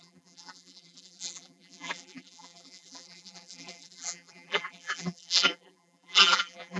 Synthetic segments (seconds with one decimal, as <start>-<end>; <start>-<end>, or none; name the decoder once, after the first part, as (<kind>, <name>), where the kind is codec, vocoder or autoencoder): 0.0-6.8 (vocoder, BigVGAN v2)